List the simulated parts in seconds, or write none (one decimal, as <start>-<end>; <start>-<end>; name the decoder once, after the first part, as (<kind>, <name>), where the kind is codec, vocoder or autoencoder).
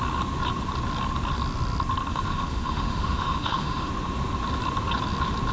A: 2.1-3.9 (autoencoder, DAC-VAE)